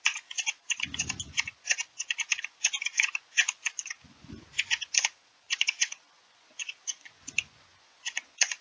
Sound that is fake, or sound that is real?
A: fake